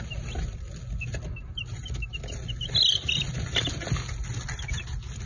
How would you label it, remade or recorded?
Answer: recorded